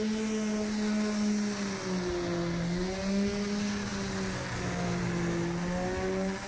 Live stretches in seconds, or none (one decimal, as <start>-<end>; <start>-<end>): 0.0-6.5